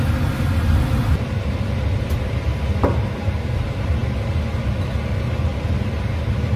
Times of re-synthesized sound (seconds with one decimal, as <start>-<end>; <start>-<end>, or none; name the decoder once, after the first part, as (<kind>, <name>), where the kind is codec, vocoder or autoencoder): none